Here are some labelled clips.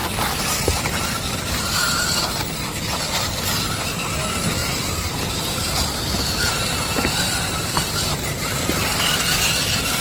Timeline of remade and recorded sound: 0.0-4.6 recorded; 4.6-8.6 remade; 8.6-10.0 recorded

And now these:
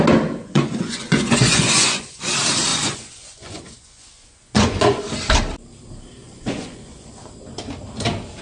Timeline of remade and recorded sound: 0.0-0.4 recorded; 0.4-2.3 remade; 2.3-2.7 recorded; 2.7-5.0 remade; 5.0-6.2 recorded; 6.2-7.1 remade; 7.1-8.4 recorded

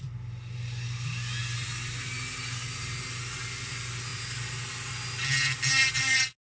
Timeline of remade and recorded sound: 0.0-6.4 recorded

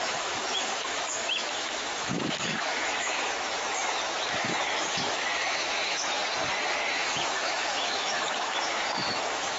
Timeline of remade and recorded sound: 0.0-6.2 remade; 6.2-6.9 recorded; 6.9-9.6 remade

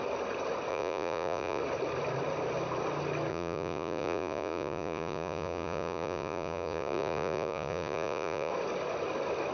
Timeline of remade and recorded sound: 0.0-0.7 recorded; 0.7-1.6 remade; 1.6-3.3 recorded; 3.3-8.5 remade; 8.5-9.5 recorded